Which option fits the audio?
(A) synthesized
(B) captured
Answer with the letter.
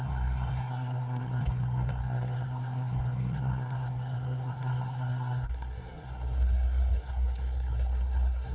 A